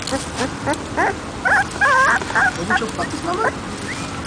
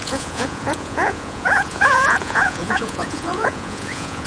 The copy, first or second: second